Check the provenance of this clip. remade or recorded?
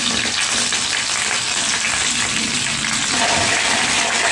recorded